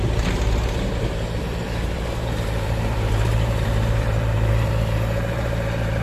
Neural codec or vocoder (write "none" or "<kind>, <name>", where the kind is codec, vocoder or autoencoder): vocoder, BigVGAN v2